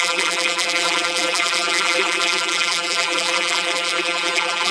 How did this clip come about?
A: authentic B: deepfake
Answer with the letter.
B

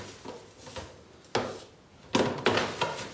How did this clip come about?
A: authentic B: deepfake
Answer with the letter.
A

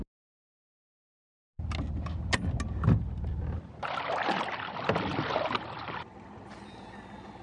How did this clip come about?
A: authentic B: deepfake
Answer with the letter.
A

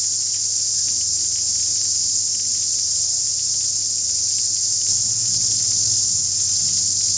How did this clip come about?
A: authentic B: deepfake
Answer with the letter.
A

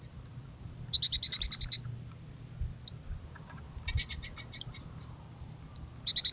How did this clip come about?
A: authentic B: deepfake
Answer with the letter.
A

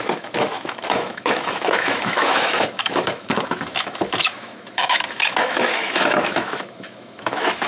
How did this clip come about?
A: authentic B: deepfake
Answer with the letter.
B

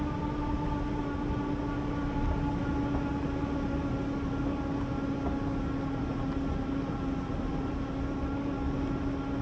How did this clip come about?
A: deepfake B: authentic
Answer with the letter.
B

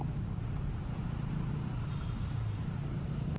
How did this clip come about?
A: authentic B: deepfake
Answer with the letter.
A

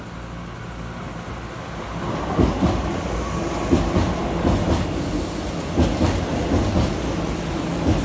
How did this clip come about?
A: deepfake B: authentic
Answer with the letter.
B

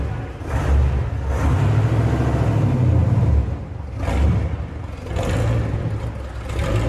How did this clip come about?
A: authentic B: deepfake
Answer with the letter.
A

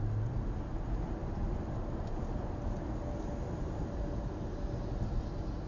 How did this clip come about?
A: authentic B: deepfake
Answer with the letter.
A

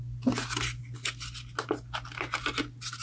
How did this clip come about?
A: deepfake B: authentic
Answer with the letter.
B